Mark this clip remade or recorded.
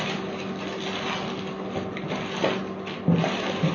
recorded